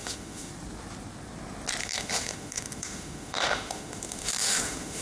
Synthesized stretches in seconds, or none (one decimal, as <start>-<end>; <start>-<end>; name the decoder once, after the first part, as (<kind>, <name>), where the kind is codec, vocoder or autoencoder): 0.0-0.5 (autoencoder, DAC-VAE); 1.8-5.0